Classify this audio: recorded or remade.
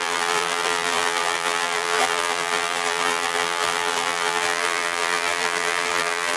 remade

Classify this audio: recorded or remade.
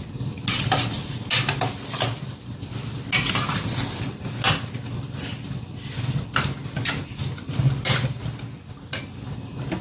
recorded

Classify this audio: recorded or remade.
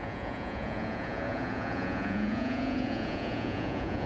remade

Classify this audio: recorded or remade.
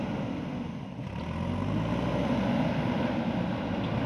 recorded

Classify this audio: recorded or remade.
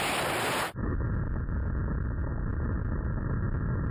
recorded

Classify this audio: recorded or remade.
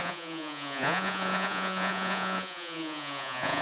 remade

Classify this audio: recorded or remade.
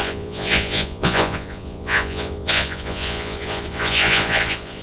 remade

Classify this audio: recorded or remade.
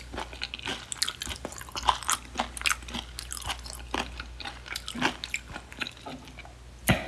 recorded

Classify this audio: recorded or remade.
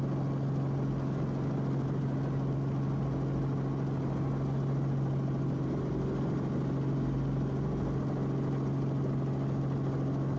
recorded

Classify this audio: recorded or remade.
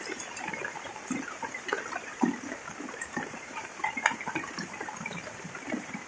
remade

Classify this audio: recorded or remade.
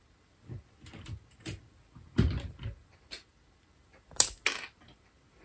recorded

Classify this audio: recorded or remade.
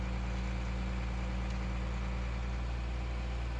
recorded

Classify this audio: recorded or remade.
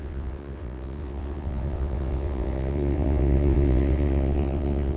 remade